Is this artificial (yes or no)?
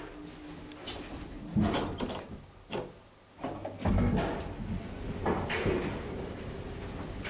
no